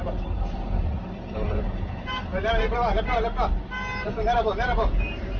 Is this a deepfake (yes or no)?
yes